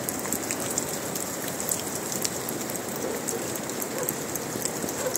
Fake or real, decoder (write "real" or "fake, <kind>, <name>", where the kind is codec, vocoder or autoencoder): real